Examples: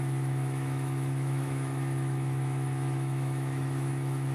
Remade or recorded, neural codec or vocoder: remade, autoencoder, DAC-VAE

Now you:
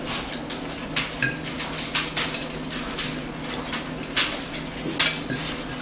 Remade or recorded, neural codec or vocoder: recorded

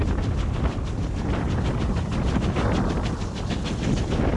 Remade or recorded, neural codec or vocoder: recorded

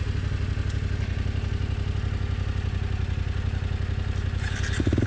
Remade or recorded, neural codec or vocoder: recorded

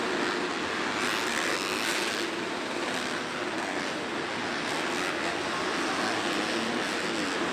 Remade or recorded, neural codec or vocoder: recorded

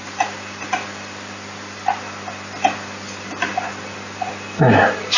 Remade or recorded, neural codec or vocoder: recorded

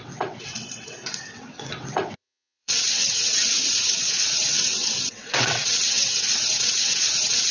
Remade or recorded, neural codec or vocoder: remade, vocoder, WaveNeXt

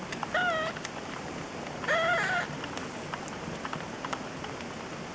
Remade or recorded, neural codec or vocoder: recorded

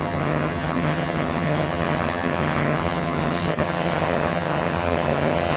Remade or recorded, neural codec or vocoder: remade, vocoder, HiFi-GAN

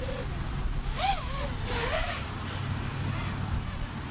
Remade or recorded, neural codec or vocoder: recorded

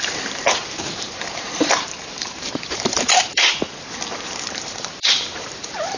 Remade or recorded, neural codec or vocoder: remade, vocoder, BigVGAN v2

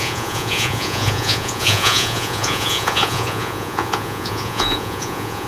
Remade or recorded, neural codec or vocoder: remade, vocoder, Vocos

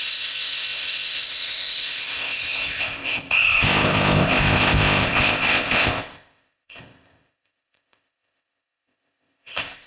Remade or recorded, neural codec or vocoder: remade, codec, ZipCodec